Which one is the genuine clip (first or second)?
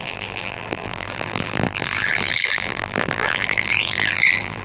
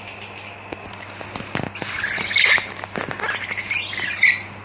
second